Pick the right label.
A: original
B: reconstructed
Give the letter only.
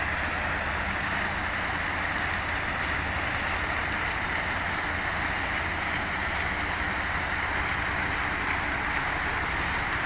A